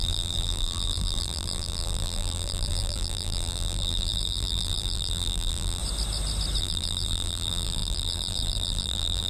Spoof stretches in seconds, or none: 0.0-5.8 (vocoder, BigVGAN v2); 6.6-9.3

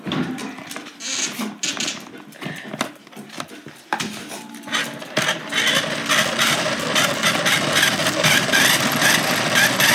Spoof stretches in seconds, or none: 8.0-8.8 (vocoder, BigVGAN v2)

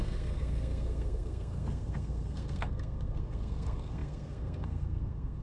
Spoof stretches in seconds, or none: 0.0-5.4 (codec, SNAC)

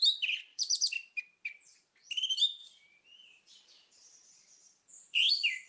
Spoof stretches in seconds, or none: 0.5-1.2 (vocoder, BigVGAN v2); 2.6-5.3

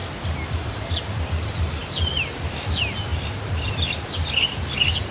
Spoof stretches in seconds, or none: none

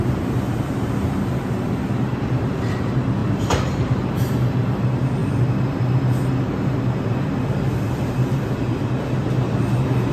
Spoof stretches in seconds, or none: 3.2-4.3 (vocoder, BigVGAN v2)

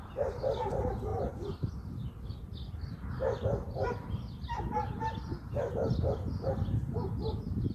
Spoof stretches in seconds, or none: none